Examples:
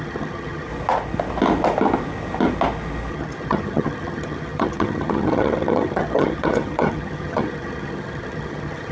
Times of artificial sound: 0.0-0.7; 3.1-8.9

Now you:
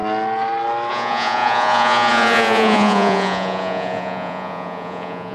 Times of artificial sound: 0.9-5.3

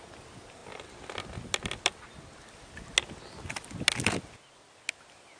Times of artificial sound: none

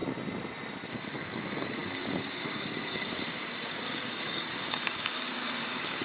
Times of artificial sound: 0.9-6.0